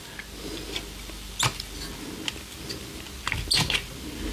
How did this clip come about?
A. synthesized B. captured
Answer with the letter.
B